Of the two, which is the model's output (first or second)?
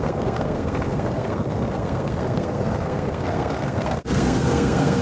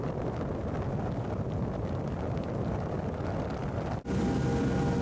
first